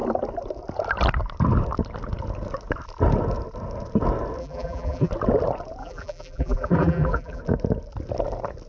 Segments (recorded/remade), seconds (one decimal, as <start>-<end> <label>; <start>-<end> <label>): 0.0-4.4 recorded; 4.4-5.1 remade; 5.1-5.8 recorded; 5.8-7.4 remade; 7.4-8.7 recorded